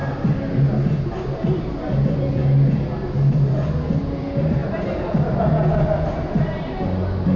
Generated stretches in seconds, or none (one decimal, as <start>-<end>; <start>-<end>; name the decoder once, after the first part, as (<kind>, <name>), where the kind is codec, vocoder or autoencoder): none